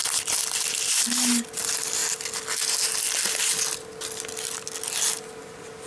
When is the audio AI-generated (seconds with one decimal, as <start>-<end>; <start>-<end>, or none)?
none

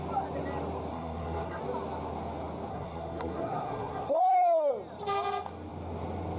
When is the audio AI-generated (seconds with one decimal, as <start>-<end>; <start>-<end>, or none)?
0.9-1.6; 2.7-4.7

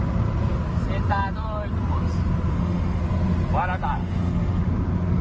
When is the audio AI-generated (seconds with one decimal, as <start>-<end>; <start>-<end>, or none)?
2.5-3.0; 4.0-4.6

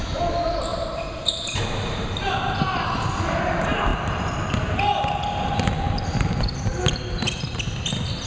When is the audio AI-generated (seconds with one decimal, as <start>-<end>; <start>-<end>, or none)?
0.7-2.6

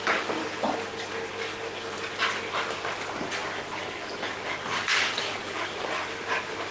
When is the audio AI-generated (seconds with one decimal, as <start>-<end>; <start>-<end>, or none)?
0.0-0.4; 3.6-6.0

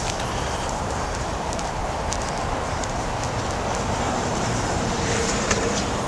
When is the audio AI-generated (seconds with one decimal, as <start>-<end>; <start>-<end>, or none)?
0.0-1.8; 3.7-6.1

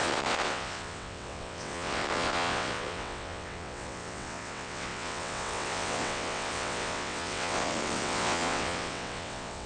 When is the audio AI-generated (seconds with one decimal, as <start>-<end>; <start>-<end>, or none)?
0.0-9.7

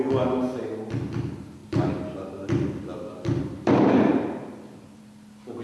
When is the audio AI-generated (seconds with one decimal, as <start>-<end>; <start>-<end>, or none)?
1.6-5.0